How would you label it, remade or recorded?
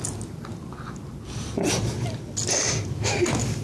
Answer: recorded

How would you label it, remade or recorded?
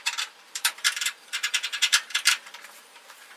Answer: remade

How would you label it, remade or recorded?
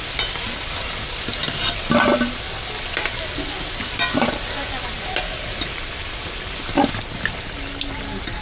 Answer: recorded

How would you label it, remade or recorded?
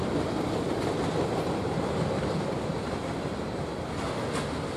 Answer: recorded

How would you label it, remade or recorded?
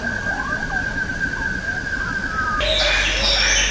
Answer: recorded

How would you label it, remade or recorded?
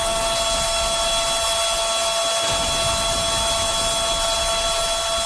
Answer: recorded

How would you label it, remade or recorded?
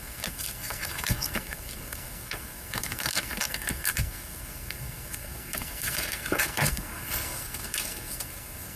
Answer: remade